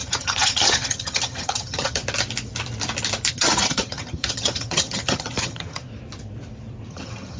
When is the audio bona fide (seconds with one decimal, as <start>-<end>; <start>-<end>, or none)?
2.0-3.3; 5.9-6.9